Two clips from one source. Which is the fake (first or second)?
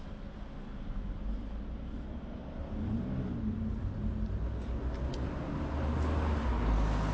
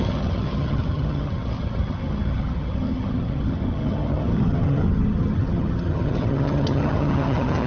second